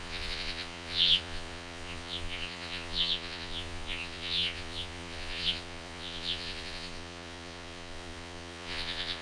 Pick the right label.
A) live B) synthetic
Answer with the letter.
B